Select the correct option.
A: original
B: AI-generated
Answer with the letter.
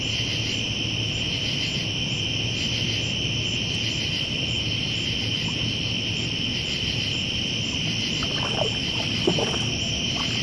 A